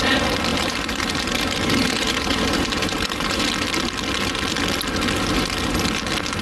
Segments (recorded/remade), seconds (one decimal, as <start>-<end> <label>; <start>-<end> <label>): 0.0-0.5 recorded; 0.5-3.4 remade; 3.4-6.4 recorded